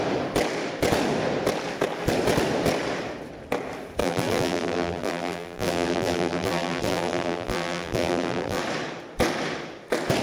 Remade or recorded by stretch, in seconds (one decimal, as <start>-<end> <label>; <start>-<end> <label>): 0.0-4.0 recorded; 4.0-8.6 remade; 8.6-10.2 recorded